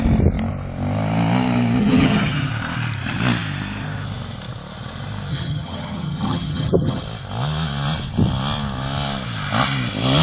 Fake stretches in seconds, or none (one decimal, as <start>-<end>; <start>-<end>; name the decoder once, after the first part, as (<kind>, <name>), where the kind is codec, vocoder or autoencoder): 1.8-2.5 (vocoder, HiFi-GAN); 5.3-7.0